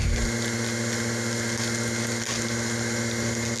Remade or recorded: recorded